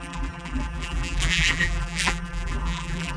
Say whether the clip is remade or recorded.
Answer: remade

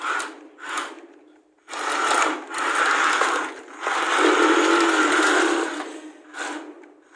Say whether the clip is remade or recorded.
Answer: recorded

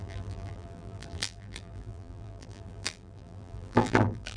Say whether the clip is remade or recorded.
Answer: remade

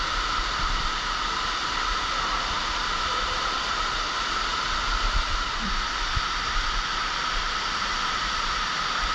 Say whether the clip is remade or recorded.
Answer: remade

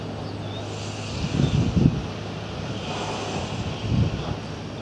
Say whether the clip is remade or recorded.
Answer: recorded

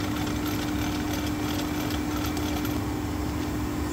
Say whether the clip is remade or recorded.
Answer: recorded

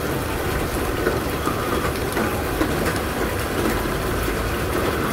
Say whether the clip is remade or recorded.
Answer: recorded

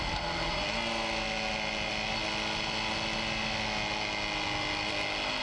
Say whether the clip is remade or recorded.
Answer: recorded